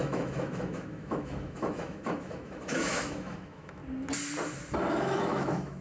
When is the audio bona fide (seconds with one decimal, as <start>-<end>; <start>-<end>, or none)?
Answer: 3.8-4.9